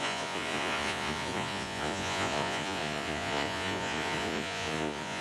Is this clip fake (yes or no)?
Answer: yes